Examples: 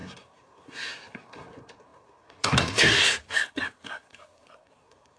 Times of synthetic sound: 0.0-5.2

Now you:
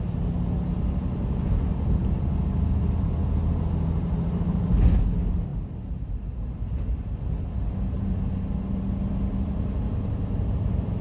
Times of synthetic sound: none

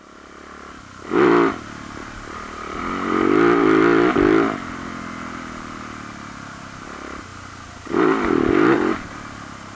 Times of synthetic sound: none

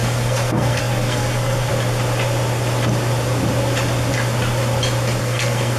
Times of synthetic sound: 0.0-1.7; 5.2-5.8

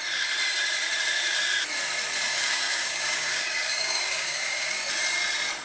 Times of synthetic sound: 2.3-4.8

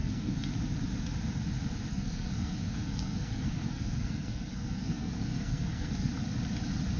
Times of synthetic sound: 0.0-0.5; 1.9-6.1